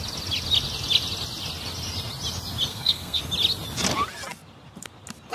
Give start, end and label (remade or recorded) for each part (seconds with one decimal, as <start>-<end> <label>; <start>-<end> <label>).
0.0-2.7 recorded; 2.7-3.2 remade; 3.2-5.3 recorded